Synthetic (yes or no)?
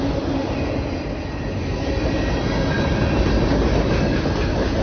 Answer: no